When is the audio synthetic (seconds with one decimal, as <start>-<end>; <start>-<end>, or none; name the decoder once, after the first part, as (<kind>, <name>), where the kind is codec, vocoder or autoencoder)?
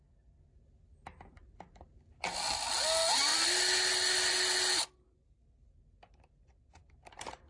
none